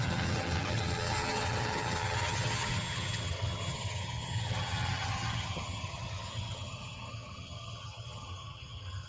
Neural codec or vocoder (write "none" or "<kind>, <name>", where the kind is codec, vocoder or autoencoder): vocoder, HiFi-GAN